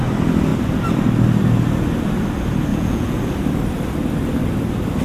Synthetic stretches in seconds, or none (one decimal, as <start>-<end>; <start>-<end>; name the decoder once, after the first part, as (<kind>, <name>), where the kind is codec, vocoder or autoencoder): 2.7-3.2 (vocoder, Vocos)